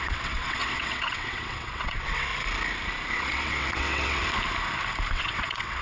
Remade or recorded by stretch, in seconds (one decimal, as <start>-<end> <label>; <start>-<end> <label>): 0.0-2.3 remade; 2.3-3.1 recorded; 3.1-4.2 remade; 4.2-5.1 recorded; 5.1-5.8 remade